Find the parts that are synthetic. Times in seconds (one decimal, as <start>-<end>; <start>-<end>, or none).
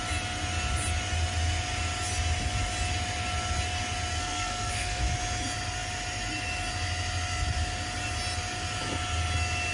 4.1-5.0